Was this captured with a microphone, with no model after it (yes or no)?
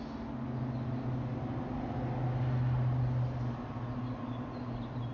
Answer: yes